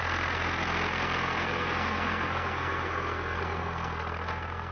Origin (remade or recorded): remade